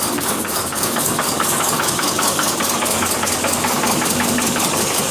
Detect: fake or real fake